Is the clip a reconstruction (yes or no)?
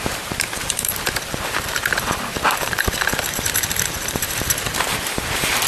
yes